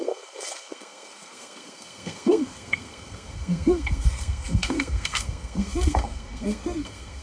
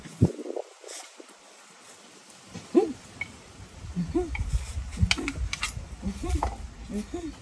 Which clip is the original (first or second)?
second